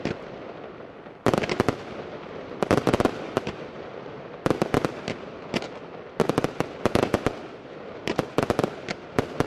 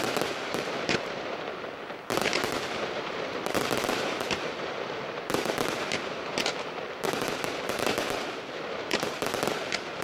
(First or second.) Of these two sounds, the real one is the first